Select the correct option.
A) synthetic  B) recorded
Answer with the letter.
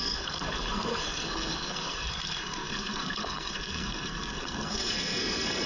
A